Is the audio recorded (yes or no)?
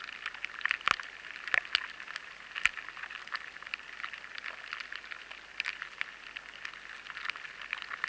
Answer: yes